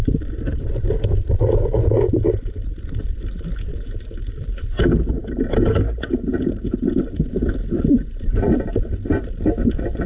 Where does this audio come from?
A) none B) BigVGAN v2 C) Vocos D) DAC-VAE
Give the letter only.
A